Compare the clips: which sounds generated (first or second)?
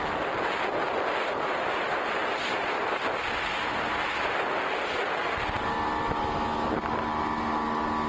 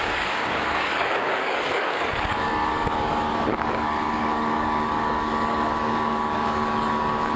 second